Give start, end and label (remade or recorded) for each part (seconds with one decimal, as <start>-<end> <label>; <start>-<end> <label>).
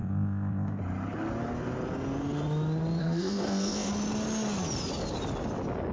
0.0-0.8 remade; 0.8-3.0 recorded; 3.0-3.9 remade; 3.9-5.9 recorded